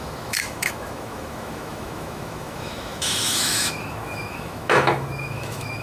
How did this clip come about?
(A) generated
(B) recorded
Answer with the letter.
A